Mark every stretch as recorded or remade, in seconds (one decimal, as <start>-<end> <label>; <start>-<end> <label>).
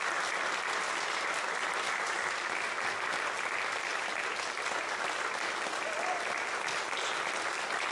0.0-7.9 recorded